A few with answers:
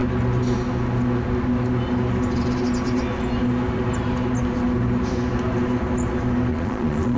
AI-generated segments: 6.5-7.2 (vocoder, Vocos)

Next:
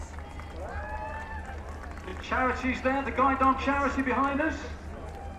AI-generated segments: none

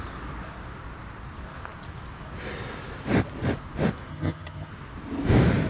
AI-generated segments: 4.1-4.7 (vocoder, HiFi-GAN)

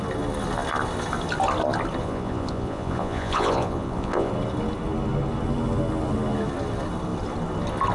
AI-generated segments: 2.0-4.3 (vocoder, Vocos)

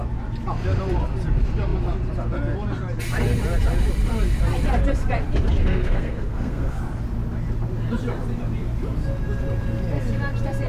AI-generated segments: 5.6-6.8 (codec, SNAC)

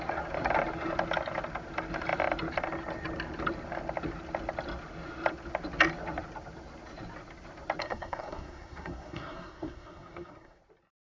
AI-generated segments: 7.8-10.6 (codec, SNAC)